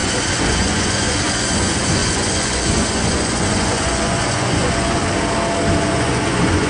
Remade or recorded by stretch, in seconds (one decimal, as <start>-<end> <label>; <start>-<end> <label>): 0.0-5.0 remade; 5.0-5.8 recorded; 5.8-6.7 remade